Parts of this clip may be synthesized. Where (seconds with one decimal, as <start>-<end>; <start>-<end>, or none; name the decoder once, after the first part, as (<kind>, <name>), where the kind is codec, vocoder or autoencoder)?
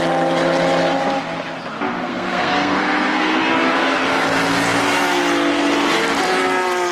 2.0-3.4 (codec, SNAC)